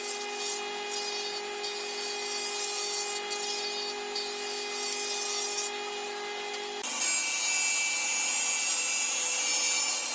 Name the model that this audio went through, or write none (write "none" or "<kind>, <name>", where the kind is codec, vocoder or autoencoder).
none